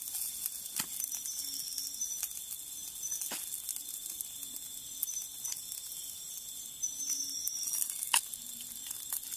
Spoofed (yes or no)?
no